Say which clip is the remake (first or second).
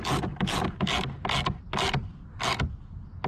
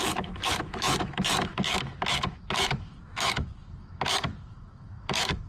second